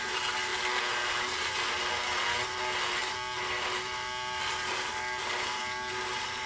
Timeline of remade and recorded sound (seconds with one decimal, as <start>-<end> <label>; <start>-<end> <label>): 0.0-6.5 recorded